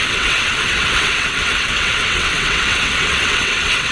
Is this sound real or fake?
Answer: fake